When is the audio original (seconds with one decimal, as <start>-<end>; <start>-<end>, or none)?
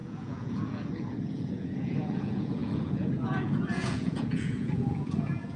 none